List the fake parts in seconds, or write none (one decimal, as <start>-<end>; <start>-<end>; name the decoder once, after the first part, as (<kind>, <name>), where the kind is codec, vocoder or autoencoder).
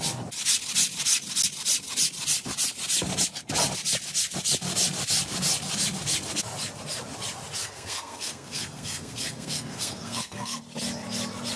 7.6-10.6 (codec, SNAC)